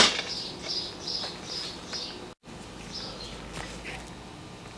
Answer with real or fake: real